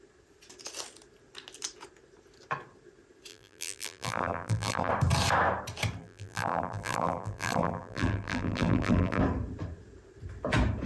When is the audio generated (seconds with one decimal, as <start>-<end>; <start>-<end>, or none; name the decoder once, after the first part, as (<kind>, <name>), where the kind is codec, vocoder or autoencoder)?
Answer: 3.3-4.9 (vocoder, BigVGAN v2); 6.0-9.2